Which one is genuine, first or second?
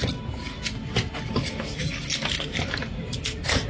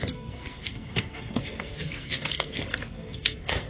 first